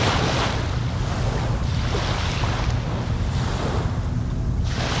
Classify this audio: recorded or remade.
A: recorded